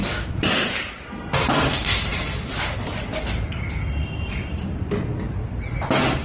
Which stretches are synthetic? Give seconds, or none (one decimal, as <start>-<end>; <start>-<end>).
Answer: none